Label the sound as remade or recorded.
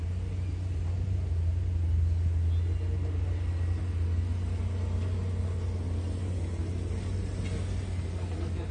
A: recorded